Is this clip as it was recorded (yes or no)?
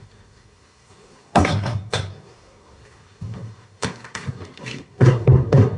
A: no